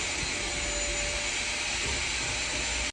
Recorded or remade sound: recorded